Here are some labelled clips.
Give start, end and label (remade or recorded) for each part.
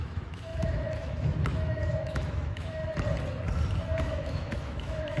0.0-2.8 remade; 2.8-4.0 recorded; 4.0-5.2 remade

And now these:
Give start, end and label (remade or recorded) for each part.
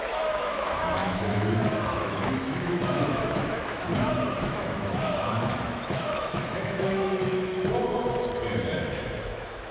0.0-3.9 remade; 3.9-4.4 recorded; 4.4-9.7 remade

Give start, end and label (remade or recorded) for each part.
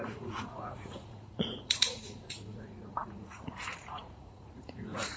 0.0-5.2 remade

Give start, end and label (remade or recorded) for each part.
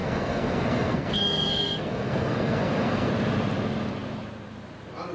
0.0-3.1 remade; 3.1-5.1 recorded